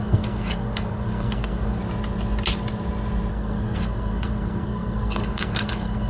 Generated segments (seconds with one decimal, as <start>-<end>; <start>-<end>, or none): 0.0-1.8; 3.3-6.1